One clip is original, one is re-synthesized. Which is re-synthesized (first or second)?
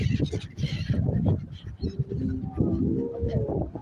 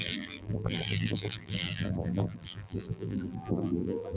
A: second